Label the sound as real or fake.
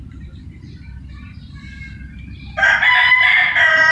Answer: real